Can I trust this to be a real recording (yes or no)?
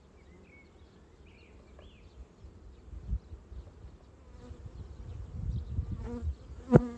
yes